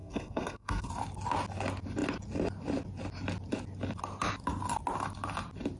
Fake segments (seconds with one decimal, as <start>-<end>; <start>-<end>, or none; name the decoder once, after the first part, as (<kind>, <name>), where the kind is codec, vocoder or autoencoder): 0.0-0.9 (codec, SNAC)